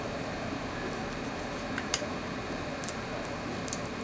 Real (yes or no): no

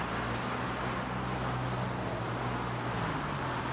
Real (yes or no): yes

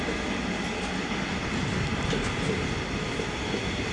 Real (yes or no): yes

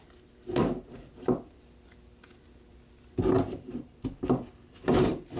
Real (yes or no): yes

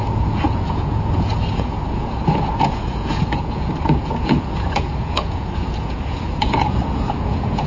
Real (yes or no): no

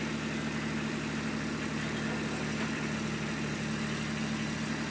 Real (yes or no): yes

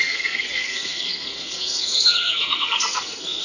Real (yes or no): no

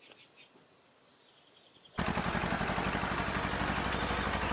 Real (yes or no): yes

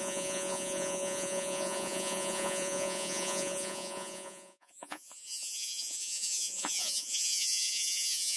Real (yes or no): no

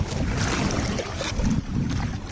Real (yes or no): yes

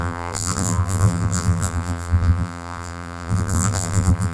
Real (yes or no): no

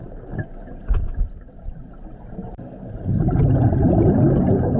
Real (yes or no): yes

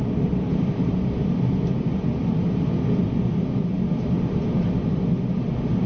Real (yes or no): no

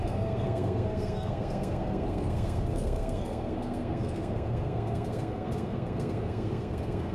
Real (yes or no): no